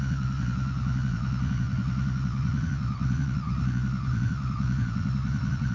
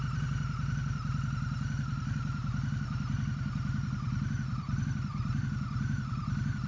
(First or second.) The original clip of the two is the second